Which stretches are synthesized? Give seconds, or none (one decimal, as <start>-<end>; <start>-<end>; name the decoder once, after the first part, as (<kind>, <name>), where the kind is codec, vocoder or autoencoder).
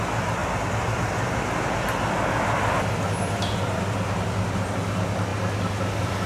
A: none